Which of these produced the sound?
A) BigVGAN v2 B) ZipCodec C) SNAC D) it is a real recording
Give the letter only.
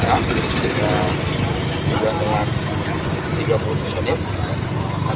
D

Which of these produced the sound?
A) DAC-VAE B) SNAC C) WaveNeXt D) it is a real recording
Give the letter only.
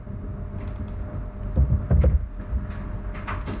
D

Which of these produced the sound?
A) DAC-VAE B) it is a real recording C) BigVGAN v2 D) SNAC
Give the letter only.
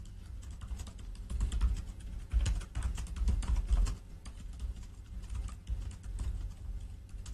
B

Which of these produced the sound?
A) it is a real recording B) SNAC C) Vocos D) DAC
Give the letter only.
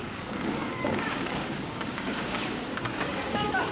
D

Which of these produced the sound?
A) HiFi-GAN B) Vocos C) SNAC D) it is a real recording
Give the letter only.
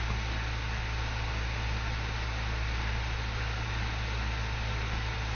D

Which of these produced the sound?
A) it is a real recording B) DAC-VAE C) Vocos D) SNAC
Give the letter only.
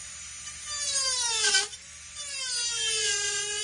A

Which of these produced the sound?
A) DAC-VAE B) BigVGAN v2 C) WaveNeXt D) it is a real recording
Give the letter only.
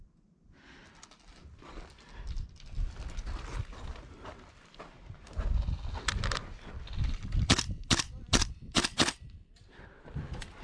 D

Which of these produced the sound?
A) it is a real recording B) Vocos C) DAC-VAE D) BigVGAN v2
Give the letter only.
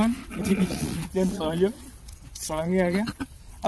B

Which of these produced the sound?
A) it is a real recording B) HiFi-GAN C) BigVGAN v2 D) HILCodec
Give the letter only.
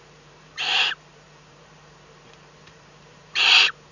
C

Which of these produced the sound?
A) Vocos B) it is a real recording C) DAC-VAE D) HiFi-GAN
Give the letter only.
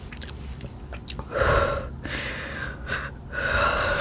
B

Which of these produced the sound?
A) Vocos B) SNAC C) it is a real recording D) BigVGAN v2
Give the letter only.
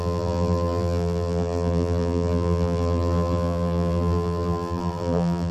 D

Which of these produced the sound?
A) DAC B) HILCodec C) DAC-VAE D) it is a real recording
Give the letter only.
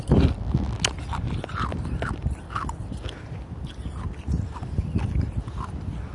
D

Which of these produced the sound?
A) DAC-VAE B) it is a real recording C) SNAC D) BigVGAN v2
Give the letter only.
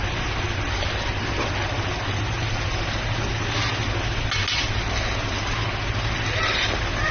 B